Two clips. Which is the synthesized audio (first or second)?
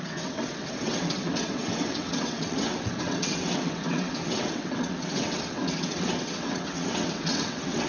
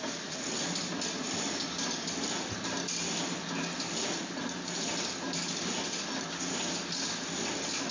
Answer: first